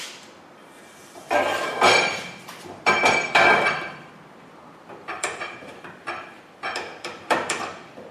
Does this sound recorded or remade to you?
remade